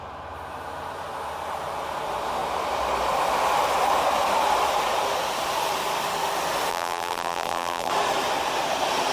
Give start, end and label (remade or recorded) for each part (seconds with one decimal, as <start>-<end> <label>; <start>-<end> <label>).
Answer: 0.0-6.7 recorded; 6.7-7.9 remade; 7.9-9.1 recorded